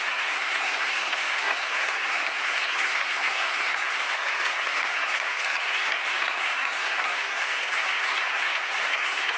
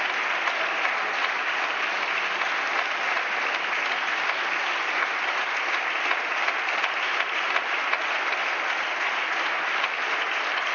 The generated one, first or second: first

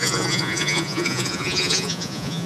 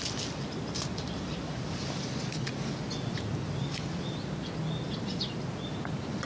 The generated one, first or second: first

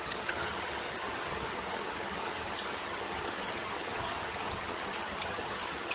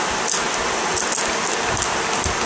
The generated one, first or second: first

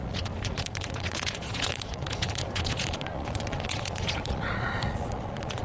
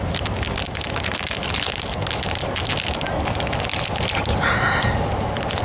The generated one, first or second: first